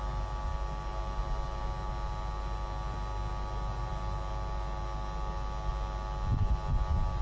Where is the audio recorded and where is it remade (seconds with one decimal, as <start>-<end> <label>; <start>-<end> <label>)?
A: 0.0-7.2 recorded